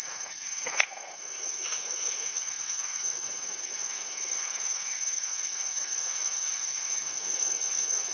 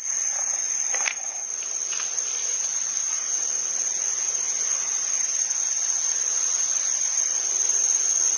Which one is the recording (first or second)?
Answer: second